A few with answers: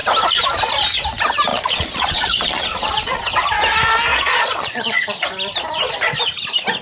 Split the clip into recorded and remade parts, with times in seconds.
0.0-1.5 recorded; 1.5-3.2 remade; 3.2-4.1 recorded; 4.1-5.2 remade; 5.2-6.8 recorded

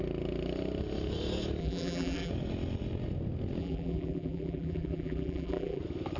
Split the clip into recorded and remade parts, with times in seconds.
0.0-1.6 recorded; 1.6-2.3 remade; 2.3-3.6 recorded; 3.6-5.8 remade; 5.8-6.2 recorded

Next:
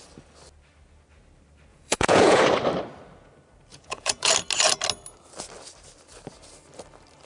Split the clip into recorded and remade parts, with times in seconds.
0.0-1.7 recorded; 1.7-2.4 remade; 2.4-3.7 recorded; 3.7-4.3 remade; 4.3-7.3 recorded